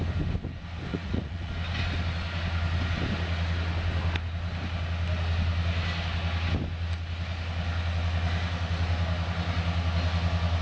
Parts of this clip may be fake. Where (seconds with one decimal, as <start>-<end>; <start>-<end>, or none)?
0.9-1.5